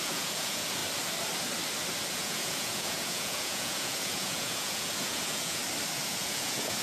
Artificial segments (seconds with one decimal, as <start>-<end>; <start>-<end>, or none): 0.0-0.8; 2.1-5.6; 6.1-6.8